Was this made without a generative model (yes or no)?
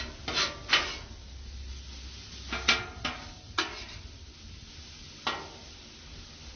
yes